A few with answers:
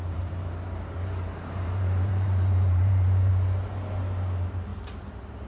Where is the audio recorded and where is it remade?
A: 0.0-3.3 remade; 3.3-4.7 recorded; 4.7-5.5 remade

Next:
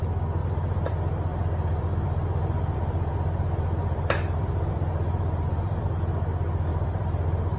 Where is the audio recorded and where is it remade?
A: 0.0-0.4 recorded; 0.4-0.9 remade; 0.9-1.3 recorded; 1.3-5.9 remade; 5.9-6.7 recorded; 6.7-7.6 remade

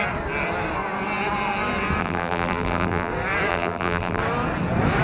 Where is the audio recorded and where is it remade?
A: 0.0-2.0 recorded; 2.0-3.1 remade; 3.1-3.5 recorded; 3.5-4.2 remade; 4.2-5.0 recorded

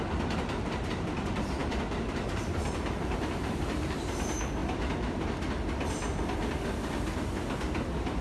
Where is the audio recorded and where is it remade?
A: 0.0-4.6 remade; 4.6-8.2 recorded

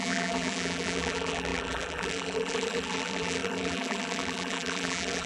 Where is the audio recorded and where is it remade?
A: 0.0-5.3 remade